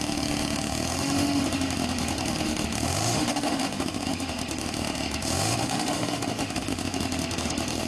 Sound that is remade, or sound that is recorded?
remade